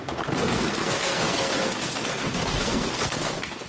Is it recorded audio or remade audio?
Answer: remade